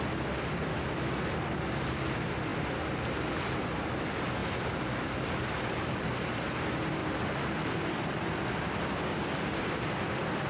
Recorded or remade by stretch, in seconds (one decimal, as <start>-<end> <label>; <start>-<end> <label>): 0.0-10.5 remade